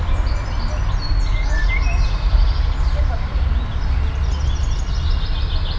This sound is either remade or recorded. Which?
recorded